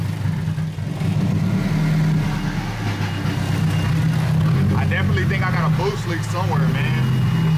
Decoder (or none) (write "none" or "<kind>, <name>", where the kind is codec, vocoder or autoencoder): none